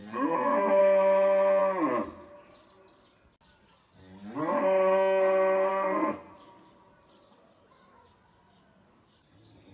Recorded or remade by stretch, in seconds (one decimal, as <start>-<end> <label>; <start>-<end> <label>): 0.0-0.8 remade; 0.8-5.7 recorded; 5.7-6.3 remade; 6.3-9.7 recorded